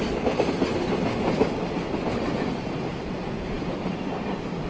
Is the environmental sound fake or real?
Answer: real